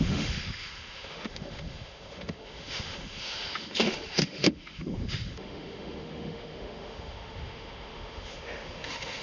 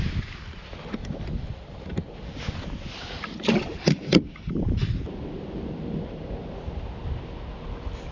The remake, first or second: first